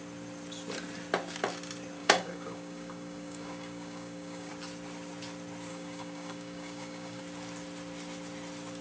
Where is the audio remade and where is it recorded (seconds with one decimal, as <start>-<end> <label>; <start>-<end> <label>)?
0.0-2.0 recorded; 2.0-4.5 remade; 4.5-5.7 recorded; 5.7-7.2 remade; 7.2-8.8 recorded

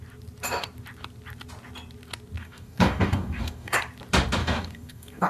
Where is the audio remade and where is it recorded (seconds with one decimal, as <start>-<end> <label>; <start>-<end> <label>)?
0.0-2.4 recorded; 2.4-3.8 remade; 3.8-4.4 recorded; 4.4-5.3 remade

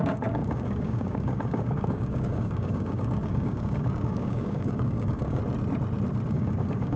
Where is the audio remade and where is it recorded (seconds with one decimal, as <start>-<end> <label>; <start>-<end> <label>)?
0.0-5.4 remade; 5.4-6.3 recorded; 6.3-7.0 remade

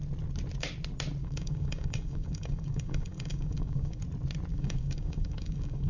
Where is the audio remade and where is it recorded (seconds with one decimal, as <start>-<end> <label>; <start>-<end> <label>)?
0.0-1.2 recorded; 1.2-4.0 remade; 4.0-4.5 recorded; 4.5-5.9 remade

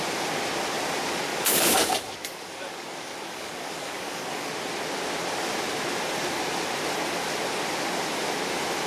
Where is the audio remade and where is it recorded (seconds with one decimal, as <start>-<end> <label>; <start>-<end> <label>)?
0.0-1.3 recorded; 1.3-4.5 remade; 4.5-8.9 recorded

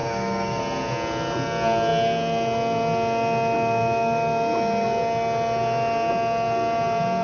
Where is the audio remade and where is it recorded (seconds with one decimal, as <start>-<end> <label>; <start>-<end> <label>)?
0.0-0.6 remade; 0.6-7.2 recorded